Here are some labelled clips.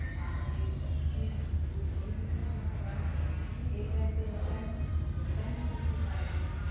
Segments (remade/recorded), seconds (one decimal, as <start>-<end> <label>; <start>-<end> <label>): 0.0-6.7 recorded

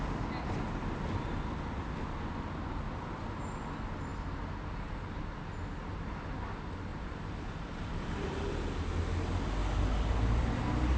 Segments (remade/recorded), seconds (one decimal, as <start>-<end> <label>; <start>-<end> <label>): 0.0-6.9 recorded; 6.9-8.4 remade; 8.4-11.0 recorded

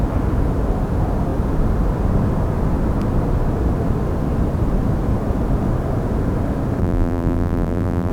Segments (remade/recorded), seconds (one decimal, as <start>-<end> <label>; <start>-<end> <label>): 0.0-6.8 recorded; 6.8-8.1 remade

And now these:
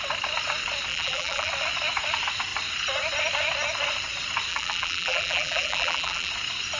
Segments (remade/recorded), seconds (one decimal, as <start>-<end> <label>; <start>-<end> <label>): 0.0-0.9 recorded; 0.9-1.5 remade; 1.5-4.5 recorded; 4.5-6.3 remade; 6.3-6.8 recorded

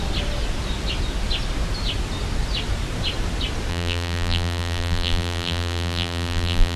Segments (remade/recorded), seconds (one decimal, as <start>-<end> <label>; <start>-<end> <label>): 0.0-3.7 recorded; 3.7-6.8 remade